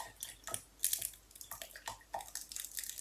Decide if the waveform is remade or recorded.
recorded